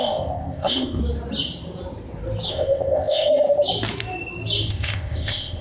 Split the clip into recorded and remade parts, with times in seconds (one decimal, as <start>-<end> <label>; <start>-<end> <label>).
0.0-1.0 remade; 1.0-2.5 recorded; 2.5-3.3 remade; 3.3-4.7 recorded; 4.7-5.6 remade